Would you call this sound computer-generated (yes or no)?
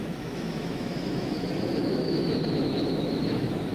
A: yes